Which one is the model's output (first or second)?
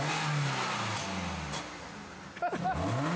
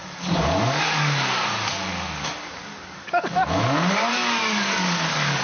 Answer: second